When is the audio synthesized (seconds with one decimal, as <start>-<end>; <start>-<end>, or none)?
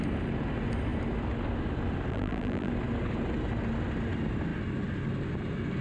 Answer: 2.1-2.7